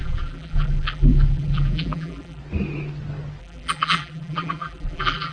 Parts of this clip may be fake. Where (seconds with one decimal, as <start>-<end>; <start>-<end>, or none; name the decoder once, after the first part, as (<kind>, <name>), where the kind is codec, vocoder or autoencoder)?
0.0-2.4 (vocoder, BigVGAN v2); 3.4-5.3